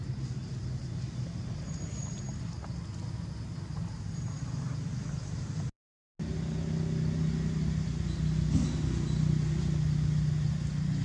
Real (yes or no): yes